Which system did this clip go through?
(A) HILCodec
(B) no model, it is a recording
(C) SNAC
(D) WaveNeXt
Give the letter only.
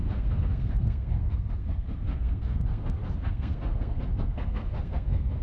C